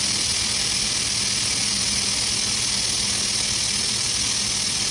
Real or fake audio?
real